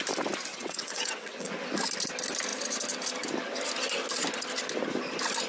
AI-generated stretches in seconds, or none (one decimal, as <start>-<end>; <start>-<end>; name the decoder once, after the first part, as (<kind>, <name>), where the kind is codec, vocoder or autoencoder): 0.5-1.5 (vocoder, WaveNeXt)